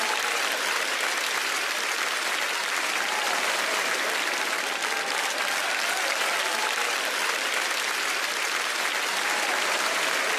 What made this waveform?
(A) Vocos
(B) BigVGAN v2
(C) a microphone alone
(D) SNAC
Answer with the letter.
B